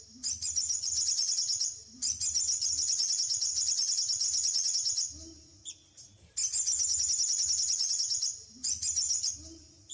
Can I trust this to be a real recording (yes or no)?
yes